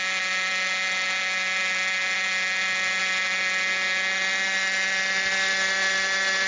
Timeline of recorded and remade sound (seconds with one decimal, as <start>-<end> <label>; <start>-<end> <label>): 0.0-6.5 recorded